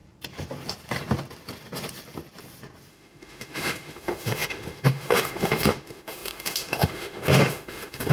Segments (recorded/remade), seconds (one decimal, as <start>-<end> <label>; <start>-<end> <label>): 0.0-2.9 recorded; 2.9-8.1 remade